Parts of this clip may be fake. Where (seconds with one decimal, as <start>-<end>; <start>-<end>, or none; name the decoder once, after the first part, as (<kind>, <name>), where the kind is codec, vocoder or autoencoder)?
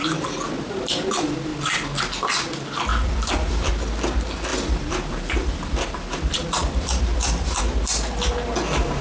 2.9-3.7 (vocoder, BigVGAN v2); 4.5-7.6